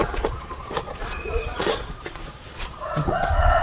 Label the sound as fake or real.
fake